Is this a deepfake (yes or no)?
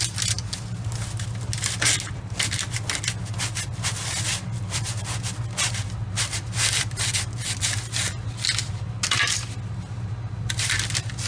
no